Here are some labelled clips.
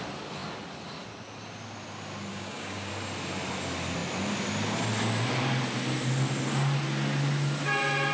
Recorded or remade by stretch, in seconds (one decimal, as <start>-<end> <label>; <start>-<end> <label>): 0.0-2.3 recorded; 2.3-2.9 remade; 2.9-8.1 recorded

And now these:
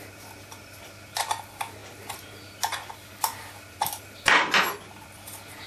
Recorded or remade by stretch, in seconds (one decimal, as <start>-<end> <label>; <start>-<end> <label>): 0.0-5.7 recorded

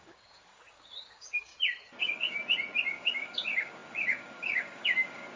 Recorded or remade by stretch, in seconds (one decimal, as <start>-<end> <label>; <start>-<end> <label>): 0.0-1.5 remade; 1.5-2.0 recorded; 2.0-2.4 remade; 2.4-2.9 recorded; 2.9-5.4 remade

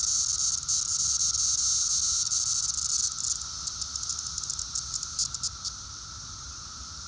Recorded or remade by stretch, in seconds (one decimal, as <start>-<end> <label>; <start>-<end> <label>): 0.0-7.1 recorded

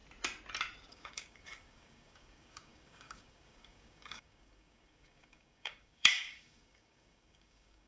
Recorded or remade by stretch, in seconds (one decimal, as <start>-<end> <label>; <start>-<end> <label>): 0.0-0.9 recorded; 0.9-7.9 remade